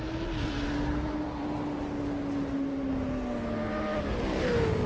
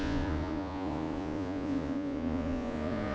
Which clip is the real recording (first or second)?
first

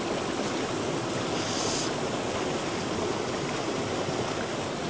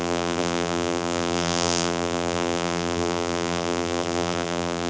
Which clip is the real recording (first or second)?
first